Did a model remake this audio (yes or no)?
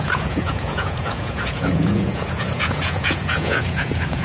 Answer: yes